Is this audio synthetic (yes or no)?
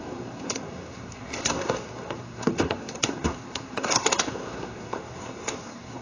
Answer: yes